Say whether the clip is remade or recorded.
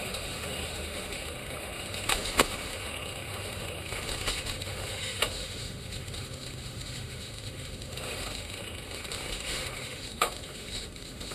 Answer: remade